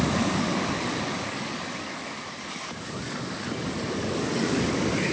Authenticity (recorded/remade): remade